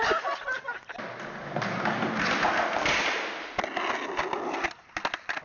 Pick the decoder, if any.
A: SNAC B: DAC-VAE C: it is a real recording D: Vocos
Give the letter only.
C